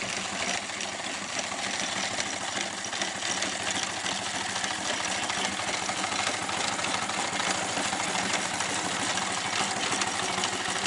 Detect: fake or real real